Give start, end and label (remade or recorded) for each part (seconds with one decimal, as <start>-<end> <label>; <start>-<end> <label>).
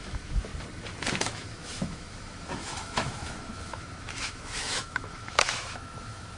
0.0-0.5 remade; 0.5-1.2 recorded; 1.2-6.4 remade